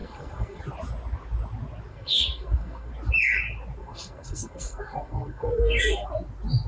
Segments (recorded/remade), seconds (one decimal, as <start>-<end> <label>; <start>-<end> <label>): 0.0-0.6 remade; 0.6-1.9 recorded; 1.9-2.9 remade; 2.9-3.8 recorded; 3.8-6.1 remade; 6.1-6.7 recorded